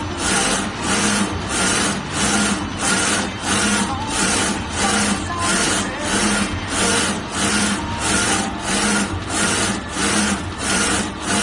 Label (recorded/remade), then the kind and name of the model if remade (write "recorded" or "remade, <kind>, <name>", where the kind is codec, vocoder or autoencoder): recorded